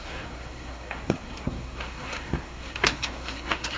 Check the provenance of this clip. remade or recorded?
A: remade